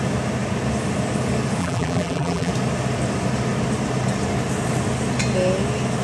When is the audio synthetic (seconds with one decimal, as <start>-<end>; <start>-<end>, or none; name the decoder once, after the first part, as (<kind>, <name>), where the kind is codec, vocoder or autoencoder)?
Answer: 1.6-2.5 (vocoder, BigVGAN v2)